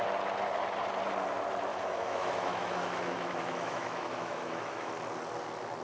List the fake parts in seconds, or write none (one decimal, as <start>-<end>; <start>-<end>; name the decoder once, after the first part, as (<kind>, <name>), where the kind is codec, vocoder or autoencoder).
1.7-4.9 (autoencoder, DAC-VAE)